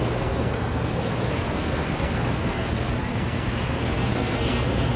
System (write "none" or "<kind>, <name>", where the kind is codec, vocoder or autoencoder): codec, SNAC